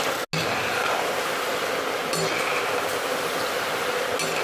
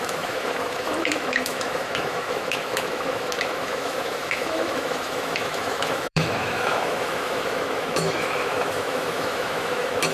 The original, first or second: first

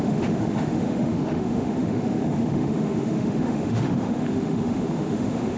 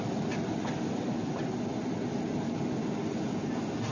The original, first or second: second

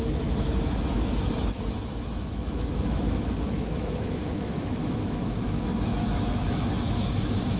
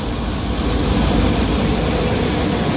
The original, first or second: second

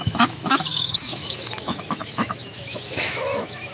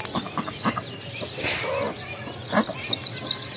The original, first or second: second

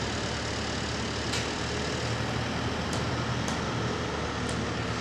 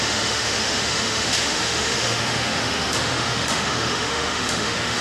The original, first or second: first